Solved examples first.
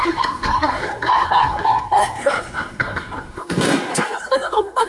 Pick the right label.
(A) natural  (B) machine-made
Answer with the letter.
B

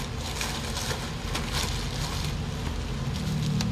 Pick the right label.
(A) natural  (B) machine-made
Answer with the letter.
A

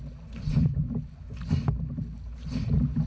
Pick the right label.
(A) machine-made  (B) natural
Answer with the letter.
B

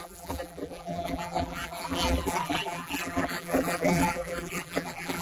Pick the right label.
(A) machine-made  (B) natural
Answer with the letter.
A